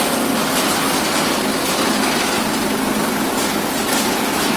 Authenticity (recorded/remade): recorded